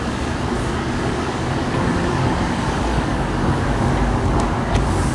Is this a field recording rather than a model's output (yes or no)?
no